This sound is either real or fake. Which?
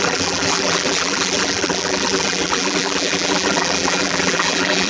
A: fake